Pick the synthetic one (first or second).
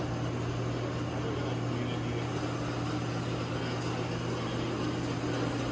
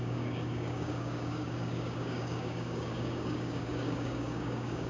second